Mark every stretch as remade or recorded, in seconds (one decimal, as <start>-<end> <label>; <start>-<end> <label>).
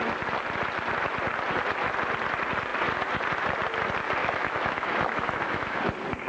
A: 0.0-4.2 recorded; 4.2-5.8 remade; 5.8-6.3 recorded